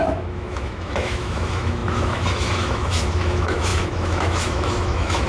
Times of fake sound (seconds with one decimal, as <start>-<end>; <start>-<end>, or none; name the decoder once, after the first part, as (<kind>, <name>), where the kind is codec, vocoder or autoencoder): 0.0-5.3 (autoencoder, DAC-VAE)